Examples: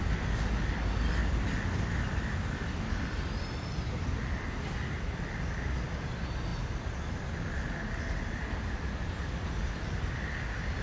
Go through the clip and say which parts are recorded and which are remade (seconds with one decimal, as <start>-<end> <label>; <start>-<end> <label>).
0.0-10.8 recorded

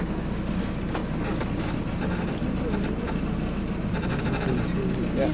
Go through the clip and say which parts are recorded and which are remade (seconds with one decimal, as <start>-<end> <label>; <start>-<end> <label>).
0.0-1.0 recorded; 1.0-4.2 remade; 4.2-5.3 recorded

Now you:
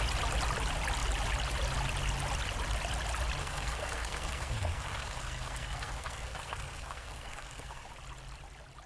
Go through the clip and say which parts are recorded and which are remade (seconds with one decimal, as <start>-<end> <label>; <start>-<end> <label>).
0.0-3.4 recorded; 3.4-7.9 remade; 7.9-8.9 recorded

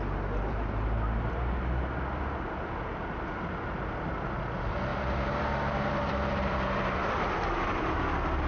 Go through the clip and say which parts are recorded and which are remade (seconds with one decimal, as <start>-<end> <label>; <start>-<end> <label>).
0.0-4.9 recorded; 4.9-8.1 remade; 8.1-8.5 recorded

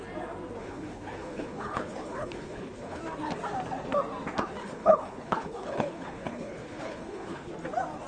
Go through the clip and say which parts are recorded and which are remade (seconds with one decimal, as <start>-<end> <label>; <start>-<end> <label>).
0.0-0.6 recorded; 0.6-3.0 remade; 3.0-4.6 recorded; 4.6-7.5 remade; 7.5-8.1 recorded

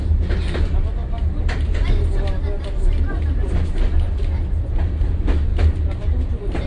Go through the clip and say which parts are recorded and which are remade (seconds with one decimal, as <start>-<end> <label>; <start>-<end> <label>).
0.0-6.7 recorded

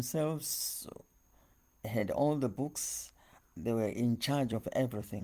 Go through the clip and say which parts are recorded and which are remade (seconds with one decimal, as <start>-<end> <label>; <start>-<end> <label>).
0.0-0.4 recorded; 0.4-1.0 remade; 1.0-2.0 recorded; 2.0-5.2 remade